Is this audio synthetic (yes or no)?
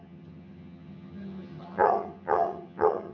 yes